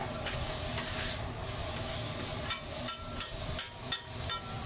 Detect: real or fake real